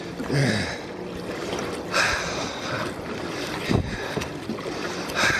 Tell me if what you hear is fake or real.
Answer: real